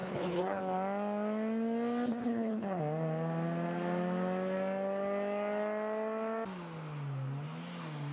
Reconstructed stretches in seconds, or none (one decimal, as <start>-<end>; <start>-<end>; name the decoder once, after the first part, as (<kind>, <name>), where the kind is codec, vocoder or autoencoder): 0.0-0.6 (codec, HILCodec); 2.2-2.8